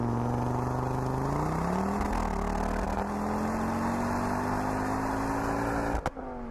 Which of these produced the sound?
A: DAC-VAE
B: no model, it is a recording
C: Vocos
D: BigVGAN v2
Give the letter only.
B